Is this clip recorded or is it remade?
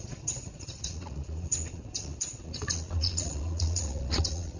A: remade